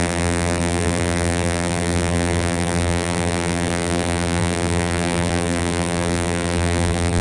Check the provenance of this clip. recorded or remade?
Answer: remade